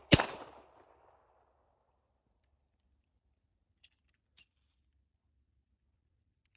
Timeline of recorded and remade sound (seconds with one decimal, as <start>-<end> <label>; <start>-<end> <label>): 0.0-6.6 recorded